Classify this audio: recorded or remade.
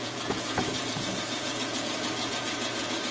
remade